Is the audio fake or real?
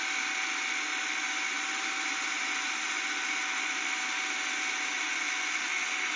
real